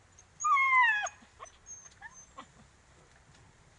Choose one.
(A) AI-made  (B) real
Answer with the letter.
B